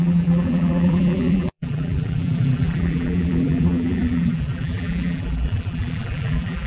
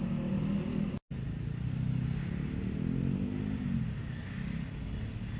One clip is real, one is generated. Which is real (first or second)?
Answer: second